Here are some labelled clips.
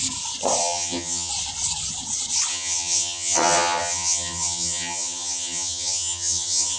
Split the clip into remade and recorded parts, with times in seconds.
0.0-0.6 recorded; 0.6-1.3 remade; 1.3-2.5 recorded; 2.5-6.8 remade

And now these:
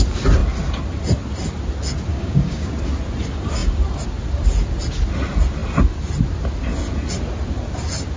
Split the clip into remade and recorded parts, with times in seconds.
0.0-2.1 recorded; 2.1-2.7 remade; 2.7-8.2 recorded

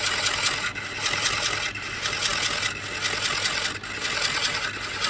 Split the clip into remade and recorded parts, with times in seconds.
0.0-5.1 recorded

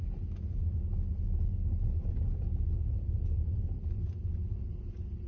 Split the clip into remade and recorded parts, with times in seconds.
0.0-5.3 recorded